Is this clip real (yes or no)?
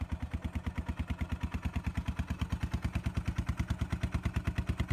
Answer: yes